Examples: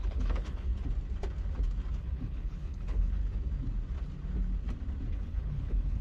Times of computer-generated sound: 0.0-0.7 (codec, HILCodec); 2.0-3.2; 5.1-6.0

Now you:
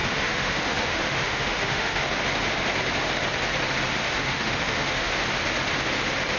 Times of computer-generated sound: 0.0-2.0 (autoencoder, DAC-VAE); 4.0-5.1

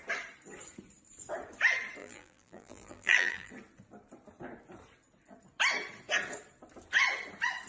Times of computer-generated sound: 2.0-3.5 (vocoder, BigVGAN v2)

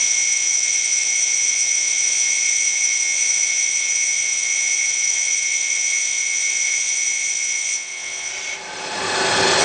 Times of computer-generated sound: 0.0-8.3 (vocoder, WaveNeXt)

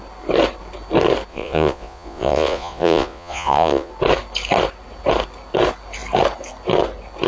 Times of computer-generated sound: 1.3-3.9 (vocoder, Vocos)

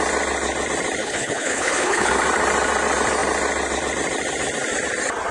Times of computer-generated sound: 1.0-2.1 (codec, HILCodec)

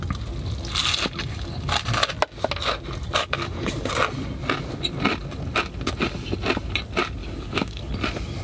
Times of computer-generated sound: 3.2-3.9 (codec, DAC); 7.2-7.9